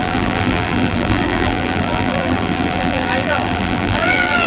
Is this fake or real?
fake